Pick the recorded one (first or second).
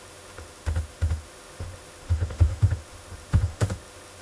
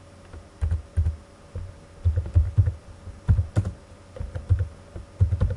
second